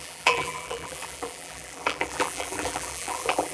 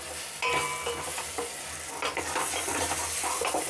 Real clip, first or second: second